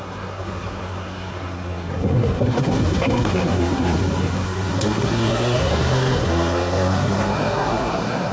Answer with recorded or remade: remade